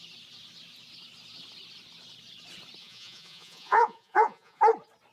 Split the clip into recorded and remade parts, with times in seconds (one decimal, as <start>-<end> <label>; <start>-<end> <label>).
0.0-2.8 recorded; 2.8-4.6 remade; 4.6-5.1 recorded